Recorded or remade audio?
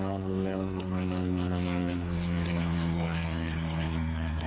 remade